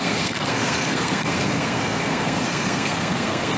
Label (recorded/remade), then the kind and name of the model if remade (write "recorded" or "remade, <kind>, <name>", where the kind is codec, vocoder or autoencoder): remade, codec, SNAC